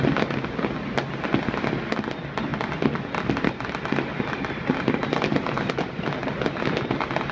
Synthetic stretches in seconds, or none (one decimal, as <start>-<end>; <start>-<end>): 2.5-7.3